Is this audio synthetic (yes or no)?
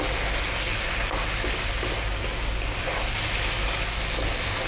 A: no